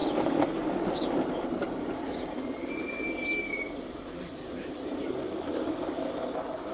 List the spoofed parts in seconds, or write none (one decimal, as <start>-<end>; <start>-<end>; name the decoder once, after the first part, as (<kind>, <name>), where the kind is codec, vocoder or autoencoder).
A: none